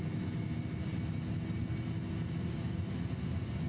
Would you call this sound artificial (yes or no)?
no